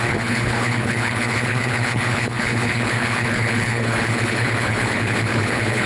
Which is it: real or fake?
fake